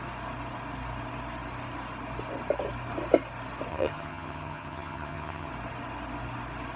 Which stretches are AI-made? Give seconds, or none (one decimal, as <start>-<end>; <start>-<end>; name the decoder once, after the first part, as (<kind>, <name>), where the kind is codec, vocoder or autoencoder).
3.7-5.5 (vocoder, HiFi-GAN)